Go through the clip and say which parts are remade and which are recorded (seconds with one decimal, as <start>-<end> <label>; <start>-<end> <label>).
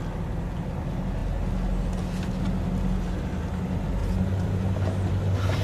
0.0-5.6 recorded